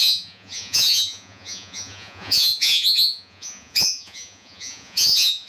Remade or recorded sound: remade